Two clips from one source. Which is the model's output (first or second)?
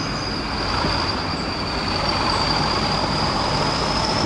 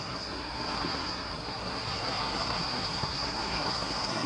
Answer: second